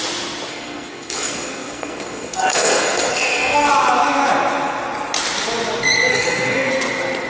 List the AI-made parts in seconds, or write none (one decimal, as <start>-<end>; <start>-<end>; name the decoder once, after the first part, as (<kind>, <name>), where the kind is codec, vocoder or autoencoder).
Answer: 0.5-3.7 (codec, SNAC); 6.1-6.7